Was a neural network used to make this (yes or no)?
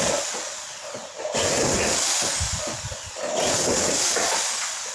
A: no